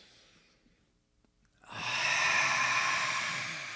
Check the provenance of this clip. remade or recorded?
recorded